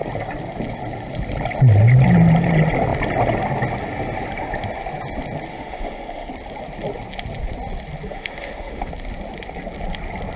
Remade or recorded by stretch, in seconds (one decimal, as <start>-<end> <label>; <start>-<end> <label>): 0.0-5.5 recorded; 5.5-6.3 remade; 6.3-8.1 recorded; 8.1-8.9 remade; 8.9-10.4 recorded